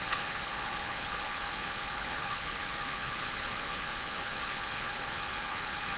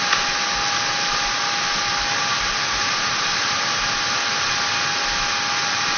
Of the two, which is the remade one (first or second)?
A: first